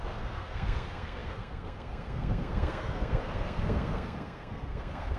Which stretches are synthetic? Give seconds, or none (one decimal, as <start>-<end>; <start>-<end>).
0.0-5.2